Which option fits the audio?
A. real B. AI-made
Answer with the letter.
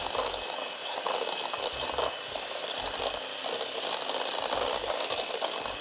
A